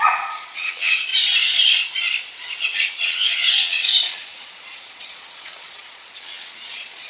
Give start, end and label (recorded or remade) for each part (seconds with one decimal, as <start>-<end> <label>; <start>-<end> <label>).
0.0-1.1 remade; 1.1-2.6 recorded; 2.6-7.1 remade